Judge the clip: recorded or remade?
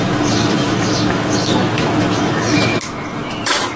remade